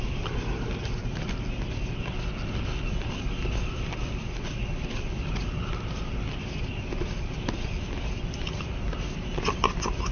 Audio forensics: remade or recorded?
recorded